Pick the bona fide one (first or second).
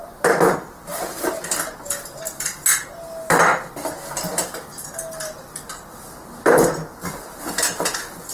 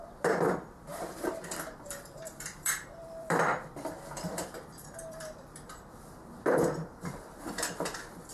first